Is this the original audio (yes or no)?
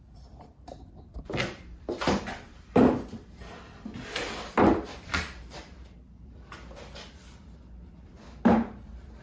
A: no